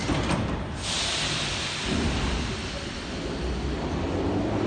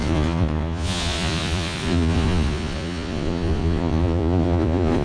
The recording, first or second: first